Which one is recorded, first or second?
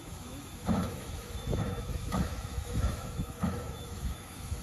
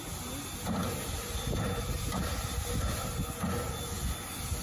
second